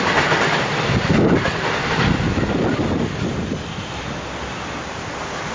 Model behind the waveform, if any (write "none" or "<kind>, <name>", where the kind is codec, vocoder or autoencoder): none